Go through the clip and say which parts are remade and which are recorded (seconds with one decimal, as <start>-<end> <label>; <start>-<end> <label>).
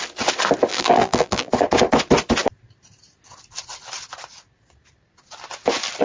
0.0-0.7 recorded; 0.7-1.5 remade; 1.5-6.0 recorded